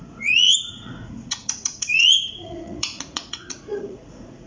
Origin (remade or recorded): remade